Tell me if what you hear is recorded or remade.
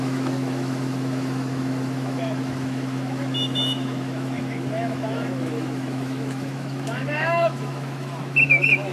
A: remade